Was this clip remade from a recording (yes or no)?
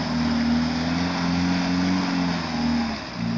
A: no